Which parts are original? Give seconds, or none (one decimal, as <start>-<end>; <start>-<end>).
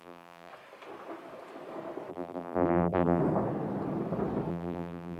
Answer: 0.5-2.1; 3.2-4.5